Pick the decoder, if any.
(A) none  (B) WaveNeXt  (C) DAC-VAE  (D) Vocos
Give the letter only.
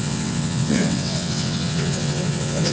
B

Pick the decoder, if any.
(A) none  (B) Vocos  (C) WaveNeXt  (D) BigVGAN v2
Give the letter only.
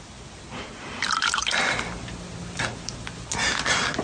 A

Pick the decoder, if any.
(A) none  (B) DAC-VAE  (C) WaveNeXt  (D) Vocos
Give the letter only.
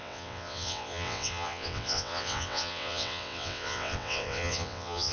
C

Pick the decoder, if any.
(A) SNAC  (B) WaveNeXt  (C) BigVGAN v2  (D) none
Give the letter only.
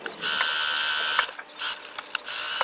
D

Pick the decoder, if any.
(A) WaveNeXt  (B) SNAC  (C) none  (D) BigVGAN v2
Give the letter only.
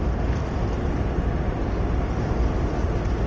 C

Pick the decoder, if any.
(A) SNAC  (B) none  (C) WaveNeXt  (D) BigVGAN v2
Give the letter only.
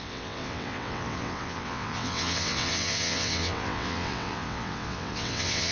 C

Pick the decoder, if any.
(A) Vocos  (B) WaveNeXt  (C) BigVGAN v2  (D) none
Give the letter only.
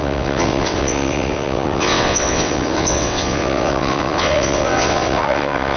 B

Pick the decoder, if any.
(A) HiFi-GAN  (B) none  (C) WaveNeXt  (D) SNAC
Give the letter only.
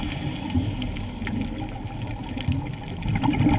B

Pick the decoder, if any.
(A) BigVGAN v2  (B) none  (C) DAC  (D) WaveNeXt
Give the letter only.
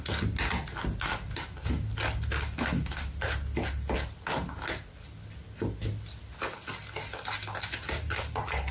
B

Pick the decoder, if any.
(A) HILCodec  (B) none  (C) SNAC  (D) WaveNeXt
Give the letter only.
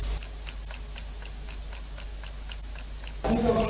B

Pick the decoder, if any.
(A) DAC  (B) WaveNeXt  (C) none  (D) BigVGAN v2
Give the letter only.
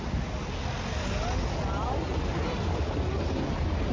C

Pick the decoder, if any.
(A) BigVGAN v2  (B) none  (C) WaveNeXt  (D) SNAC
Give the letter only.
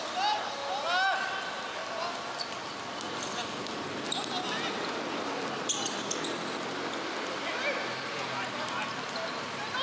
B